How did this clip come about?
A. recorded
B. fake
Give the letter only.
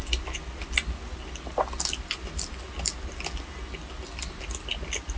A